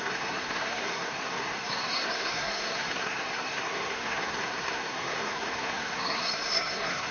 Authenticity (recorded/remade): remade